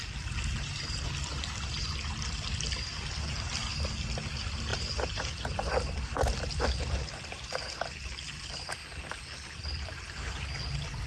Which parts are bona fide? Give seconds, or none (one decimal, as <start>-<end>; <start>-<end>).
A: 0.0-11.1